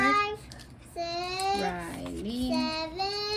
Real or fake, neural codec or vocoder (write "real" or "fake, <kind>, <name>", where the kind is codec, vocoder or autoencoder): real